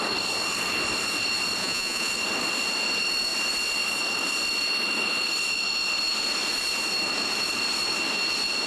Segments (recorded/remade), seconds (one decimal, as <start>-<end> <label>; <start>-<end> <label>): 0.0-1.6 recorded; 1.6-2.1 remade; 2.1-8.7 recorded